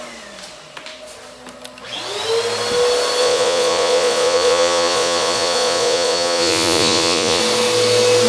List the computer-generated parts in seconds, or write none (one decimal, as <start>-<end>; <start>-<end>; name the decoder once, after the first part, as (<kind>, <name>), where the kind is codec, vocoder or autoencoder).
3.2-7.4 (vocoder, Vocos)

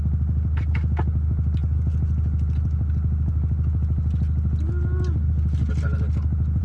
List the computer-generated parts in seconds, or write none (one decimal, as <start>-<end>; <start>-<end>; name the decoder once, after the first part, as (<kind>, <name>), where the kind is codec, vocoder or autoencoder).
none

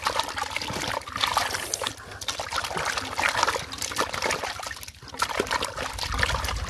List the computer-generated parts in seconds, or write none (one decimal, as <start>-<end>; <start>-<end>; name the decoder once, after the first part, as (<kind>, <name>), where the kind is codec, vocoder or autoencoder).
none

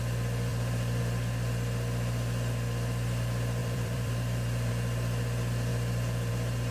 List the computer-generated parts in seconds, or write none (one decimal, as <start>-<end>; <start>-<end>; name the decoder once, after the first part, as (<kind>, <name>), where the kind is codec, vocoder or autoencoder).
0.5-1.0 (vocoder, BigVGAN v2); 3.6-4.7; 5.7-6.3